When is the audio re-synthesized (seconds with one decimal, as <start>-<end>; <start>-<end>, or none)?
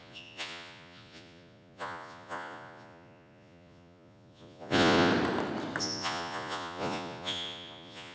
0.0-5.1; 5.8-8.1